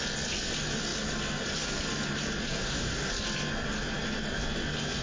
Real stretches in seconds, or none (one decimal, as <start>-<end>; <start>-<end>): 0.0-2.5; 3.1-5.0